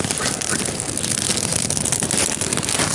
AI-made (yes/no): no